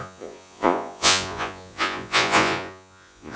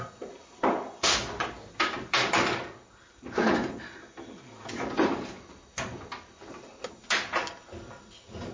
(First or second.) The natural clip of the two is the second